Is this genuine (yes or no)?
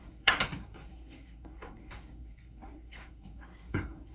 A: no